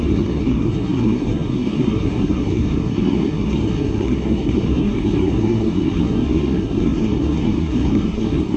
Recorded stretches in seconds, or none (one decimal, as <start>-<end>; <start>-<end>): none